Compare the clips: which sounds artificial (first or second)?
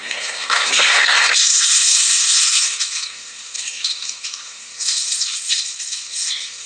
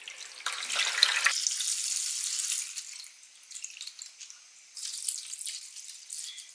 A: first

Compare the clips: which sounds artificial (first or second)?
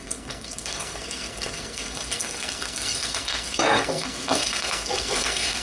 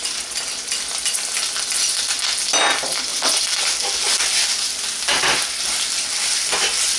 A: first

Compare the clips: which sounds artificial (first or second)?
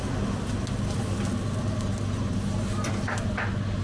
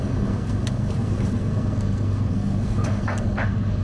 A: second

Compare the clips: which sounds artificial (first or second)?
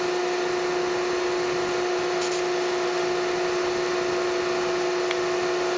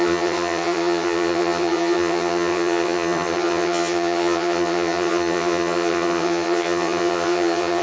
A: second